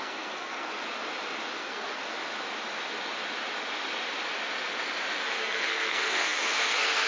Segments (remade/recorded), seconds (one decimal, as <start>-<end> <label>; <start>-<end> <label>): 0.0-0.8 remade; 0.8-1.6 recorded; 1.6-2.0 remade; 2.0-5.2 recorded; 5.2-7.1 remade

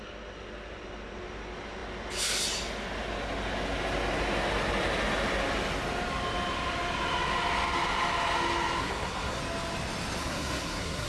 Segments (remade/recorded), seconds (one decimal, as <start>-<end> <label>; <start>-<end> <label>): 0.0-8.8 recorded; 8.8-9.4 remade; 9.4-10.2 recorded; 10.2-11.1 remade

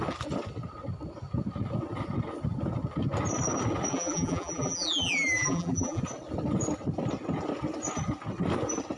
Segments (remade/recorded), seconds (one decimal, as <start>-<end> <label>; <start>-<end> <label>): 0.0-3.9 recorded; 3.9-6.0 remade; 6.0-9.0 recorded